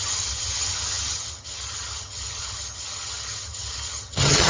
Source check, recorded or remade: remade